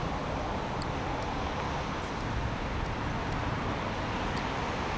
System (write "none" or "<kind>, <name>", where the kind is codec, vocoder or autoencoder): none